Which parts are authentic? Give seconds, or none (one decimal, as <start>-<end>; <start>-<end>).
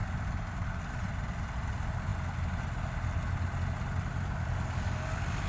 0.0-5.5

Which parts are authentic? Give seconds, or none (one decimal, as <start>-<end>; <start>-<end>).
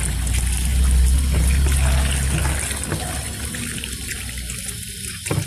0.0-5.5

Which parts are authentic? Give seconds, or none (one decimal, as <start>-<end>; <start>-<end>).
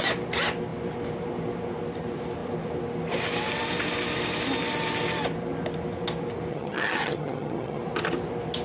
0.0-6.5; 7.8-8.6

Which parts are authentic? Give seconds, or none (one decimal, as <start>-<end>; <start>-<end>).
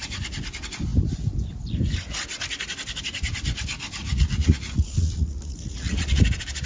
0.0-4.0; 6.2-6.7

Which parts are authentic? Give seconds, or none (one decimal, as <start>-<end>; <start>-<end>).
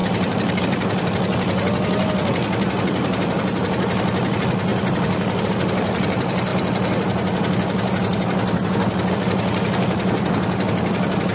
0.0-11.3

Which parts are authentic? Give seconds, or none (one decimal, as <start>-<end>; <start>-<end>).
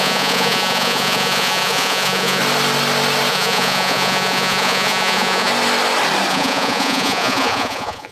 2.4-3.3; 5.5-6.3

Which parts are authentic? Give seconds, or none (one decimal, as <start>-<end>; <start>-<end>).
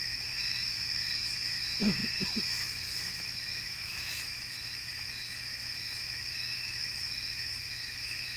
none